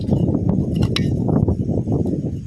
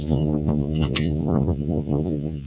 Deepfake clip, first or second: second